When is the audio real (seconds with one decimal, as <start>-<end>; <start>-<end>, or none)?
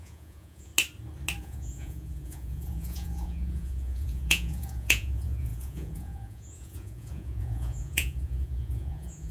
0.7-1.4